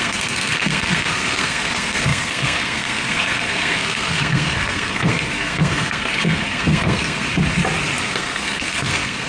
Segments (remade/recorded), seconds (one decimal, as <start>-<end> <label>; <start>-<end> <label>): 0.0-7.3 remade; 7.3-8.0 recorded; 8.0-9.3 remade